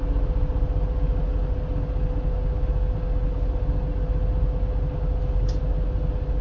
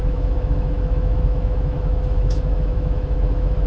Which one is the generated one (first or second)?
second